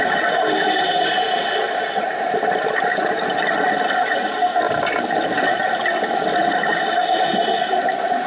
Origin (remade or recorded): recorded